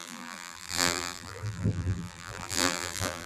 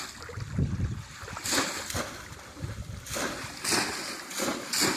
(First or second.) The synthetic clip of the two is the first